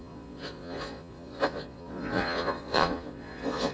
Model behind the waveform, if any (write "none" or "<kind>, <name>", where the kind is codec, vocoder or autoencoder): vocoder, Vocos